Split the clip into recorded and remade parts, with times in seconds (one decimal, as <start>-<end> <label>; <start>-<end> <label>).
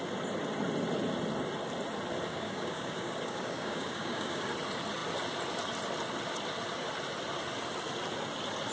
0.0-2.3 recorded; 2.3-4.4 remade; 4.4-8.7 recorded